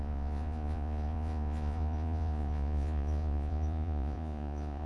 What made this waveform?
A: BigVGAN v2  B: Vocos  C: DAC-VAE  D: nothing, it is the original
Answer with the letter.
B